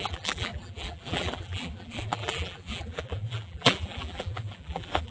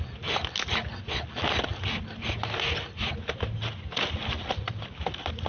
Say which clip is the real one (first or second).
second